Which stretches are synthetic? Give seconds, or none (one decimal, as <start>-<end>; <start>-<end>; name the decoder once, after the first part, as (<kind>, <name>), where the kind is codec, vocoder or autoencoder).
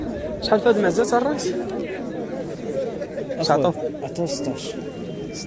none